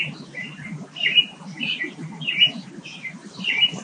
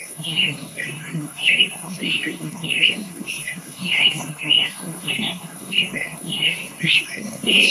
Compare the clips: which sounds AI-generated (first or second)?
second